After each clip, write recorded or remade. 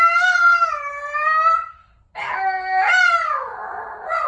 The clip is recorded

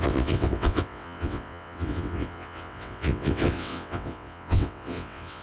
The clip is remade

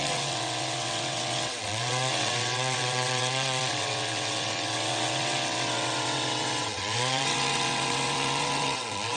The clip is remade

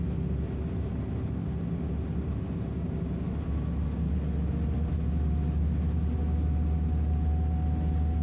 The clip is recorded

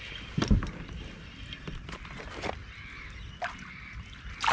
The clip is recorded